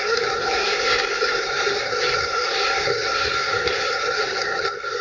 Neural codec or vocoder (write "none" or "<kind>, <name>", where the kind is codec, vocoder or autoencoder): codec, SNAC